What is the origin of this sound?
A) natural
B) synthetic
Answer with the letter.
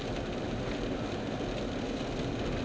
A